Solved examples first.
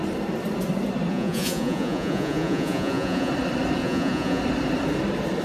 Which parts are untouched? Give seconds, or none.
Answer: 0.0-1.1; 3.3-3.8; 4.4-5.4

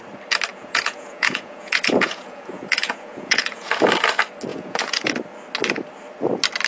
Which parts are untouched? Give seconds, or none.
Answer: 0.0-0.5; 3.7-4.5; 5.1-6.7

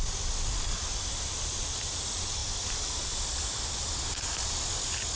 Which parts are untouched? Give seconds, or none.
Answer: 0.0-5.2

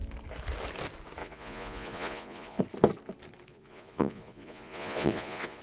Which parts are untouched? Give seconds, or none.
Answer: 0.0-1.2; 2.6-3.5

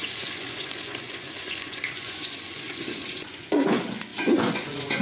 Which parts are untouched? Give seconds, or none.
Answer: none